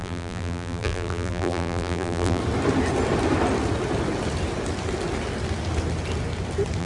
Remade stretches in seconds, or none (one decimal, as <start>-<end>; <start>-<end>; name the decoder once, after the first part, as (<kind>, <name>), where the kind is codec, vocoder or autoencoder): 0.0-2.4 (vocoder, BigVGAN v2)

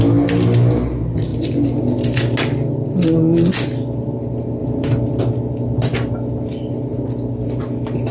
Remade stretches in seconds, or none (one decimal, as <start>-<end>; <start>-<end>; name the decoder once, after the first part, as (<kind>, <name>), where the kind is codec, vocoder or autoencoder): 1.3-1.8 (vocoder, BigVGAN v2)

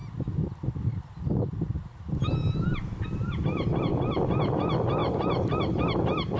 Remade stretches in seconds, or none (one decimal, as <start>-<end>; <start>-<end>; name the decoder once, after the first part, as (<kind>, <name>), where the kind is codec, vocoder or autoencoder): 5.0-5.8 (vocoder, BigVGAN v2)

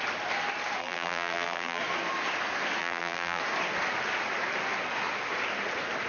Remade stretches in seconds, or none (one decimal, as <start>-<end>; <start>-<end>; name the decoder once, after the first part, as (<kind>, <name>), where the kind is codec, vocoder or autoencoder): 0.8-1.8 (vocoder, BigVGAN v2); 2.8-3.4

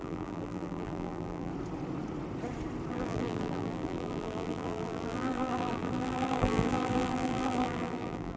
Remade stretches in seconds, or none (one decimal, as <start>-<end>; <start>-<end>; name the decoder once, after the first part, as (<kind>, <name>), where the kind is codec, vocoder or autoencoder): 0.0-1.5 (vocoder, BigVGAN v2); 2.9-8.4